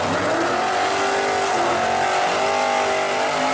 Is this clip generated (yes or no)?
no